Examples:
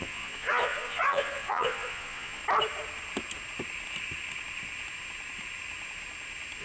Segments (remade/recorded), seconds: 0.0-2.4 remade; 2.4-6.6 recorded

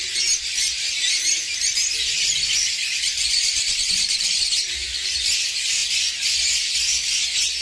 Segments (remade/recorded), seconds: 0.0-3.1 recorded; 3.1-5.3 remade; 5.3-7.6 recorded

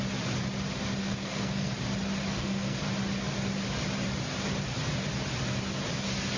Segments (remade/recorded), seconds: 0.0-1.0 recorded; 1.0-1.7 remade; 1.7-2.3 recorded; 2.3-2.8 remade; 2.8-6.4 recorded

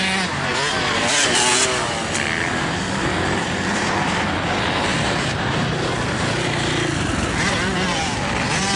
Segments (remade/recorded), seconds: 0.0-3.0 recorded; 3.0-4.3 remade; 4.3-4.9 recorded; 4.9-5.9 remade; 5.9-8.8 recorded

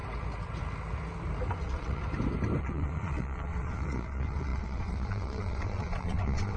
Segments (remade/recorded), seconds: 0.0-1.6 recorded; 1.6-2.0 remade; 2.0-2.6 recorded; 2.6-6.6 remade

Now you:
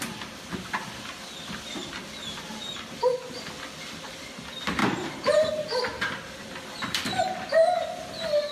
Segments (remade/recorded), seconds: 0.0-5.9 remade; 5.9-6.6 recorded; 6.6-8.5 remade

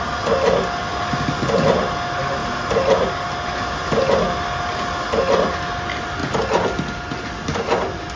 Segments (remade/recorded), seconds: 0.0-8.2 recorded

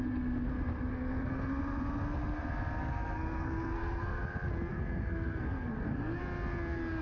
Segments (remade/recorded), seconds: 0.0-0.9 recorded; 0.9-1.5 remade; 1.5-2.8 recorded; 2.8-4.2 remade; 4.2-4.7 recorded; 4.7-6.2 remade; 6.2-7.0 recorded